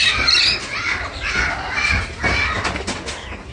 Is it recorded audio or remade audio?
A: recorded